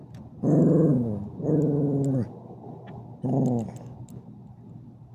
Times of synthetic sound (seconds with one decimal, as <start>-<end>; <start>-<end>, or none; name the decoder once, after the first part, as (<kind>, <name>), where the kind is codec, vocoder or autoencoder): none